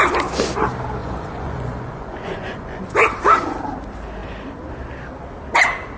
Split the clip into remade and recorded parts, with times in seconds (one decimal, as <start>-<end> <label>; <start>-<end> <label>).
0.0-1.0 recorded; 1.0-2.8 remade; 2.8-6.0 recorded